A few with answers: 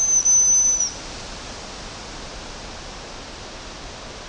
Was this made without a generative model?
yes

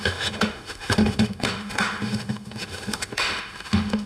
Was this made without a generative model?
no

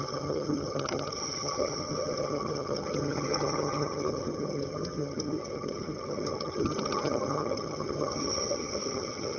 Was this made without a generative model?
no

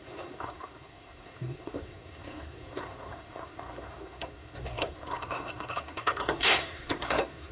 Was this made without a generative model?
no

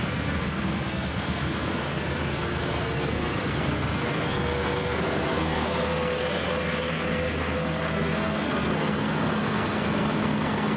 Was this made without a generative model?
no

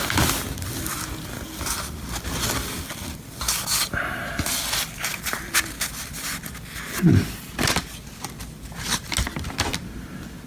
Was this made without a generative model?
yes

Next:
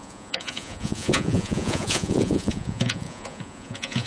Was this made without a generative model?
no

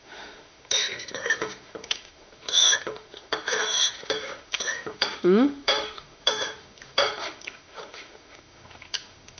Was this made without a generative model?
no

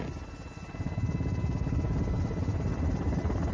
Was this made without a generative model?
yes